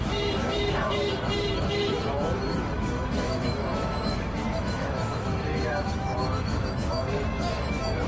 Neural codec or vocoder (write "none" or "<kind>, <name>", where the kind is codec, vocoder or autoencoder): autoencoder, DAC-VAE